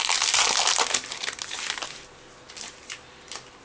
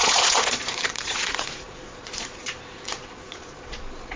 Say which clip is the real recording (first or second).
first